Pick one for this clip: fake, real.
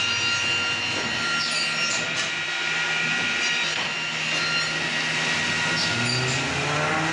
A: real